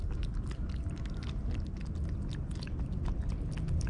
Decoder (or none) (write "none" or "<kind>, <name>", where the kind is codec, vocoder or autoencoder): none